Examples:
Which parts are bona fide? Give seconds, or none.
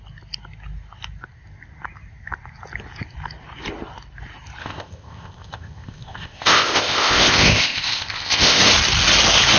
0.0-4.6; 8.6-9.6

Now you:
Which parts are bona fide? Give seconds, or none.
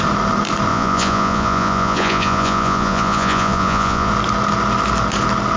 0.0-0.7; 4.1-5.6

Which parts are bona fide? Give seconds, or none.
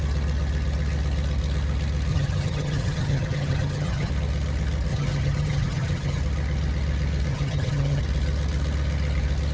0.0-2.1; 4.1-4.9; 6.2-7.3; 8.0-9.5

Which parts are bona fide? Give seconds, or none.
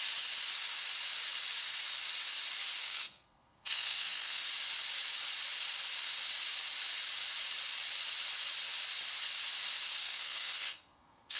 0.0-2.8; 4.4-10.0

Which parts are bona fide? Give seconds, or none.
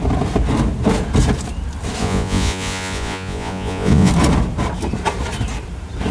0.0-2.0; 4.1-6.1